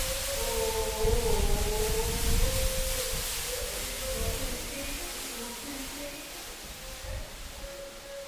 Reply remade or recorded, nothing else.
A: recorded